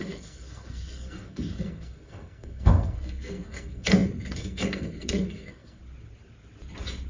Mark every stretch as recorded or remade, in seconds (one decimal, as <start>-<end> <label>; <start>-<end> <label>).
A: 0.0-5.8 remade; 5.8-7.1 recorded